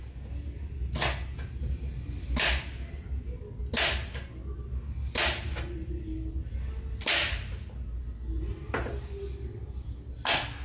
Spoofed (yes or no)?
no